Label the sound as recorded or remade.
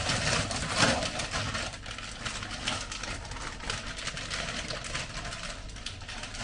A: recorded